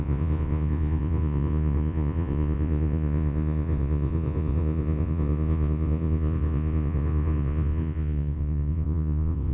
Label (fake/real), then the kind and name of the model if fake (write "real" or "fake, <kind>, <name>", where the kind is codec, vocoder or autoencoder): fake, vocoder, Vocos